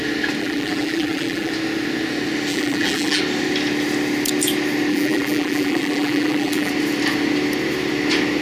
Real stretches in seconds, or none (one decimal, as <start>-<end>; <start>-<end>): 0.0-0.4; 1.5-2.5; 3.2-4.9; 6.7-8.4